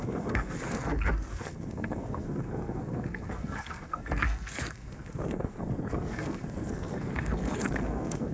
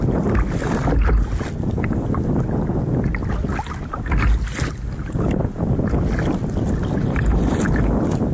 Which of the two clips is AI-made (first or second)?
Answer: first